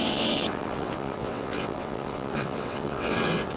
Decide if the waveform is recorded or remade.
remade